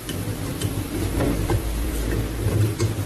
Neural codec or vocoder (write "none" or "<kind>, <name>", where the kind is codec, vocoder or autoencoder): vocoder, BigVGAN v2